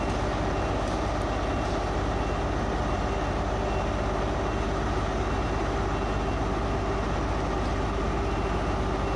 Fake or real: real